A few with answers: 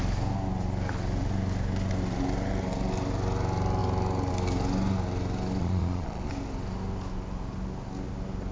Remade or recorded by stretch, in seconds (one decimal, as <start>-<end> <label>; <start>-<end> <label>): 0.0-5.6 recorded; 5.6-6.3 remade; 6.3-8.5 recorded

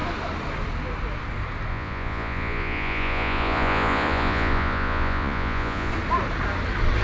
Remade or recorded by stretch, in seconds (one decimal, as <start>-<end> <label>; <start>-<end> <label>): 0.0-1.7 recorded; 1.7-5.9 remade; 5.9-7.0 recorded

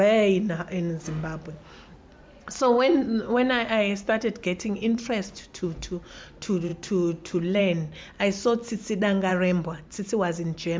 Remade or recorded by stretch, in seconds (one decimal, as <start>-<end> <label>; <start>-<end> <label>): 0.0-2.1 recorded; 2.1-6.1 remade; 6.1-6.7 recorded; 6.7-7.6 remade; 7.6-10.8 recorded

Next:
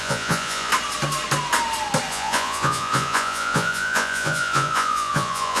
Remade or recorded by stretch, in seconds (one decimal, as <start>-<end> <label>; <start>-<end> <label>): 0.0-0.7 remade; 0.7-2.1 recorded; 2.1-5.6 remade